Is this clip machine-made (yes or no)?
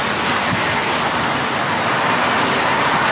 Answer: no